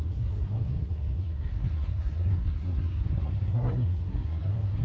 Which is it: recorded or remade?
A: remade